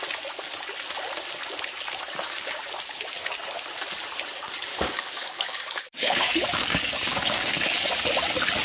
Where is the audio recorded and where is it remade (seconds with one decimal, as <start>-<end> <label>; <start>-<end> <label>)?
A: 0.0-4.7 recorded; 4.7-7.9 remade; 7.9-8.6 recorded